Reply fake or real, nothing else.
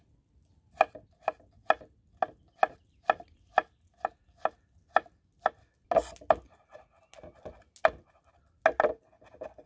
real